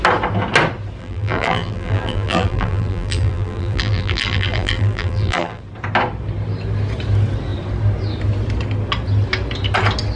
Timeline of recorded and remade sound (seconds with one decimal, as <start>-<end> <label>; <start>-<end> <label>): 0.0-1.0 recorded; 1.0-5.6 remade; 5.6-10.2 recorded